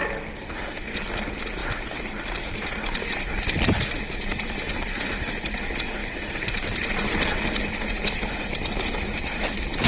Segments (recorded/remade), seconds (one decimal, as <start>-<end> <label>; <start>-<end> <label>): 0.0-1.6 recorded; 1.6-5.3 remade; 5.3-6.0 recorded; 6.0-9.9 remade